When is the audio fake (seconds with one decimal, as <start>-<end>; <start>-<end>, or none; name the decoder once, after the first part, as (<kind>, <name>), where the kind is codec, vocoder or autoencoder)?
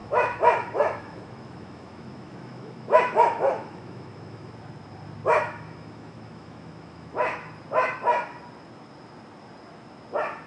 0.0-4.5 (autoencoder, DAC-VAE); 5.3-7.5